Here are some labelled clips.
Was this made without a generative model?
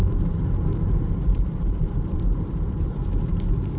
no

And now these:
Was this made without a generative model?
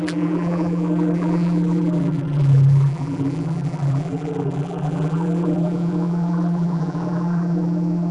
no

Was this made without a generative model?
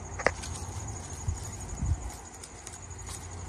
yes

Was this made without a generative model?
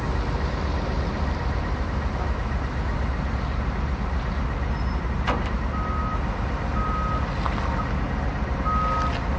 yes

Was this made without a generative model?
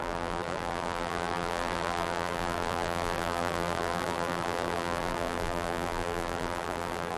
no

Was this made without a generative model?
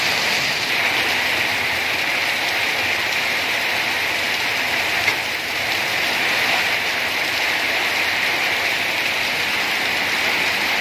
yes